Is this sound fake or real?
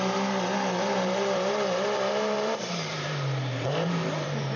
fake